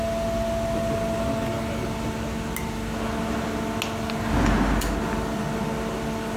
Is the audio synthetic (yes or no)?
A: no